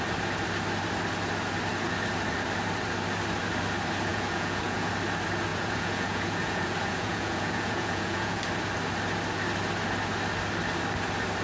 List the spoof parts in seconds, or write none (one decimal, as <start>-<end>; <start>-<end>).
4.1-4.9; 5.5-8.4